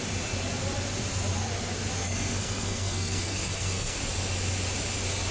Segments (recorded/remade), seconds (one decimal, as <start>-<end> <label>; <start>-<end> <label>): 0.0-2.0 recorded; 2.0-4.0 remade; 4.0-5.3 recorded